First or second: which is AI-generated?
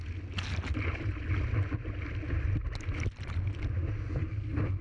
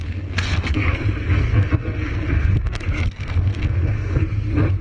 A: second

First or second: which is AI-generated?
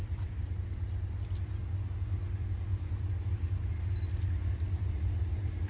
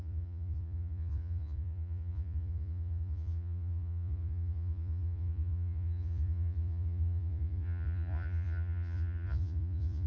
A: second